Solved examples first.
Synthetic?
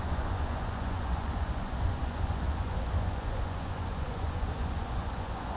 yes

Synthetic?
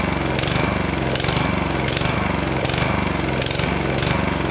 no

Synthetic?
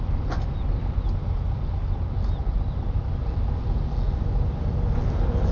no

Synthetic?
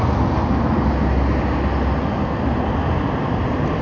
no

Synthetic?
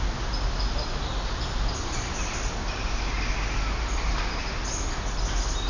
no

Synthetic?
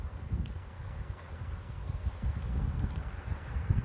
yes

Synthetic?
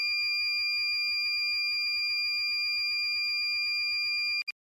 no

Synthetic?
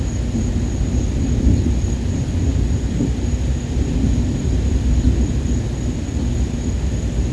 no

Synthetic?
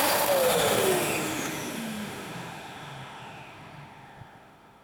yes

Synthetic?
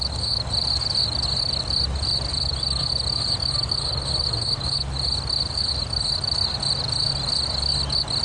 no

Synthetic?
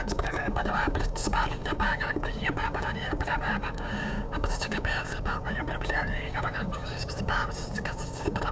yes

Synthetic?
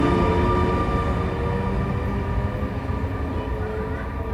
no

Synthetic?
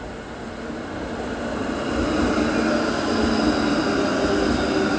no